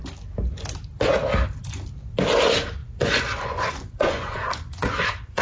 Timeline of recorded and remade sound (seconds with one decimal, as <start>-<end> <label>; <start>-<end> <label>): 0.0-2.8 recorded; 2.8-5.4 remade